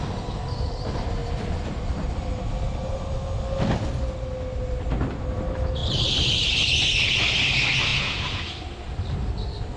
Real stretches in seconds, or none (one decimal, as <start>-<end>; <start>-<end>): 0.0-7.9; 8.5-9.8